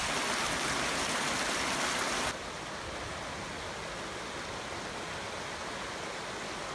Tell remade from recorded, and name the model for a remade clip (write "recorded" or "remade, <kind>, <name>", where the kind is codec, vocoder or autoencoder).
recorded